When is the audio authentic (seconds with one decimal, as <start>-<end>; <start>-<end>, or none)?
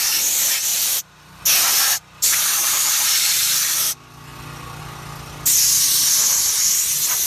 0.0-0.7; 1.4-2.7; 3.8-7.3